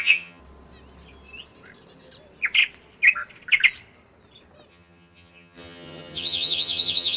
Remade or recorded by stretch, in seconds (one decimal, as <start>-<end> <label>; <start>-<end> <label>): 0.0-0.4 remade; 0.4-4.7 recorded; 4.7-7.2 remade